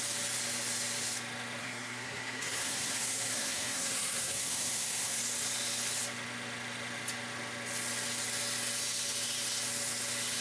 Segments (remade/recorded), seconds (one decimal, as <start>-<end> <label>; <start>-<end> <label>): 0.0-1.6 recorded; 1.6-5.2 remade; 5.2-10.4 recorded